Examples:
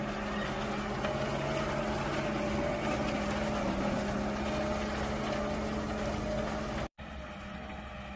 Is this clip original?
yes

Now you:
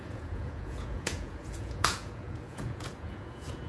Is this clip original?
no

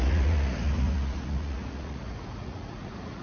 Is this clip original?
no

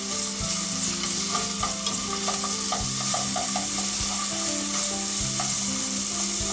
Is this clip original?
yes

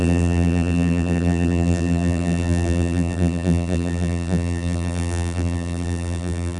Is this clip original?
no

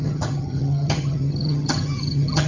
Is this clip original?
no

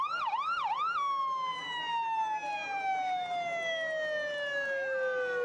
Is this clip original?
yes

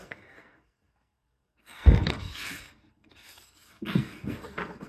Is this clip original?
no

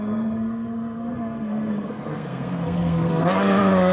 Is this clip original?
no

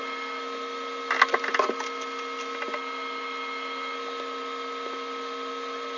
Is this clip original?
yes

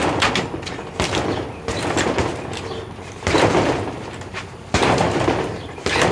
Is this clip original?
yes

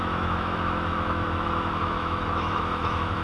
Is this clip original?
no